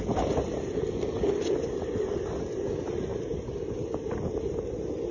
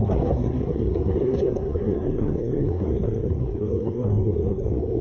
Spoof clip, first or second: second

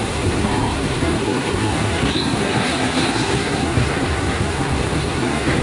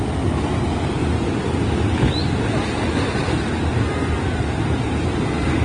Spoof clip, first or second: first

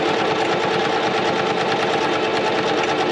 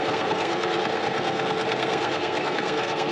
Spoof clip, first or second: second